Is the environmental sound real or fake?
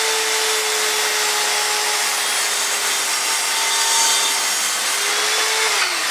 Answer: real